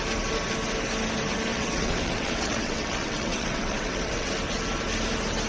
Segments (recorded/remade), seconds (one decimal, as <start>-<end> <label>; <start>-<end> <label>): 0.0-1.5 recorded; 1.5-4.3 remade; 4.3-5.5 recorded